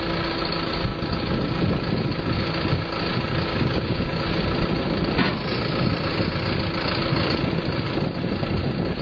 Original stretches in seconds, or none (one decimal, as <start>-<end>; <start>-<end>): 0.0-3.5; 4.2-9.0

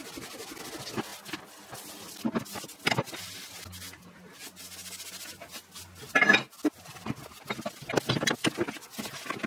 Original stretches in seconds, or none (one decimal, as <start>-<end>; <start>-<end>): 0.0-9.5

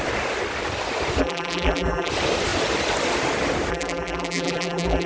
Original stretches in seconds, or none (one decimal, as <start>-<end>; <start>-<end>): 0.0-1.2; 2.1-3.7

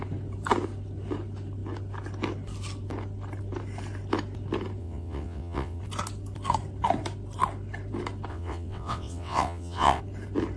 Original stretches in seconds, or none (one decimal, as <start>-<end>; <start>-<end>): 0.0-4.8; 5.8-8.3; 10.0-10.6

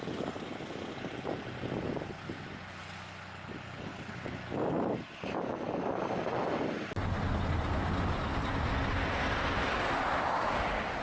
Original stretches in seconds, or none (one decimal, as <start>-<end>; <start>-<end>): 0.0-11.0